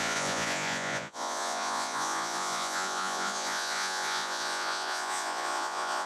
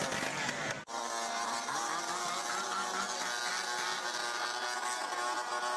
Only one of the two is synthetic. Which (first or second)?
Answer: first